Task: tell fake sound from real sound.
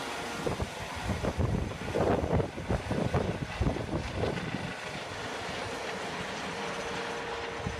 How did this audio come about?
real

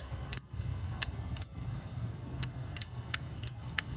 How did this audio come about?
fake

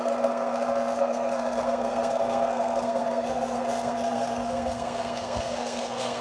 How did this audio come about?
fake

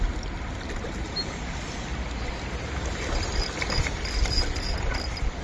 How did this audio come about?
real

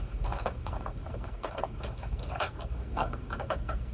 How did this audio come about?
fake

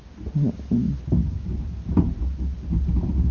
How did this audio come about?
real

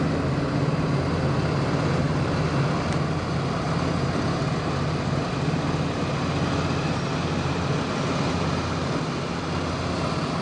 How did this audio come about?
real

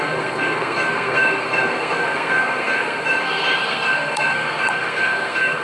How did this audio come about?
fake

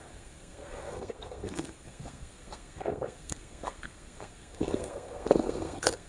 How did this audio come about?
fake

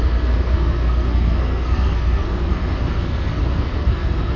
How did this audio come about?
fake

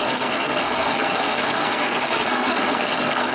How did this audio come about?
fake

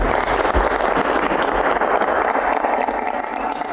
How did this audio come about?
real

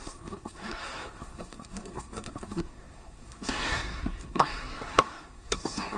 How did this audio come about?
fake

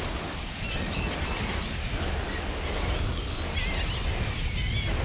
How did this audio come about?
real